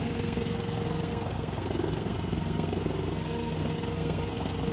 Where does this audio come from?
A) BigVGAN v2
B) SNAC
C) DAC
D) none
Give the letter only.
B